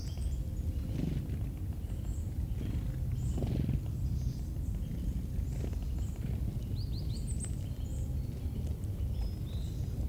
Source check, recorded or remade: recorded